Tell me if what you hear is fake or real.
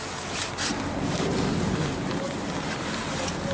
real